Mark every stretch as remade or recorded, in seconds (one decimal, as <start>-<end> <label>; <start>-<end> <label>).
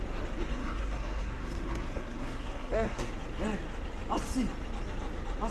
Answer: 0.0-0.5 recorded; 0.5-3.1 remade; 3.1-5.5 recorded